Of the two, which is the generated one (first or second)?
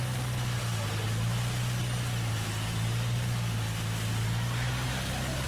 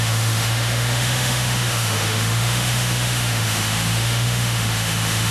second